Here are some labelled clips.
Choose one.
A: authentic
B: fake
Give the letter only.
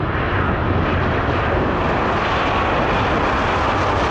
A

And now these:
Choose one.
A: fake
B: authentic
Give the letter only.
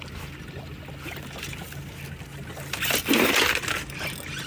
B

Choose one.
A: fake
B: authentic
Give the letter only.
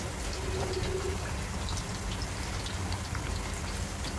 B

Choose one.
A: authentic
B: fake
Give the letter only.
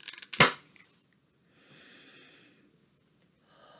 A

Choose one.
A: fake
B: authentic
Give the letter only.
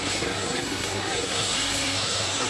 A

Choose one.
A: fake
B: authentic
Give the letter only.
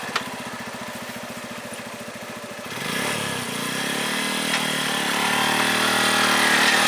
B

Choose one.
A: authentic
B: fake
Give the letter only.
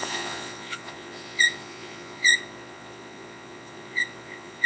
B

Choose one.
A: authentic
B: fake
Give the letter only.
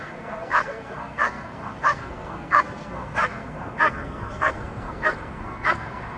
B